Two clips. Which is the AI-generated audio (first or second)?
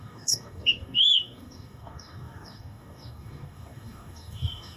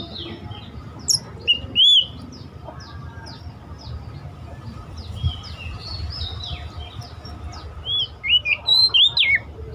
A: first